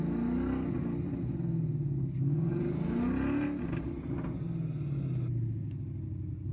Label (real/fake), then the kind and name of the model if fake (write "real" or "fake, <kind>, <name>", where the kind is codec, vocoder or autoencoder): real